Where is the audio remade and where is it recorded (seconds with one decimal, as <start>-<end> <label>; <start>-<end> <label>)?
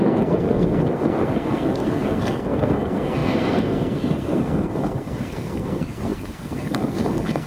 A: 0.0-7.5 remade